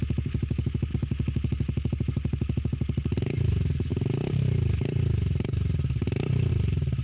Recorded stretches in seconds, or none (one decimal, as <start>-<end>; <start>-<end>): 0.0-7.0